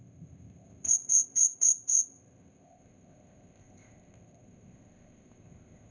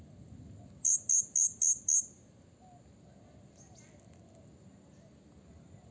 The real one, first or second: second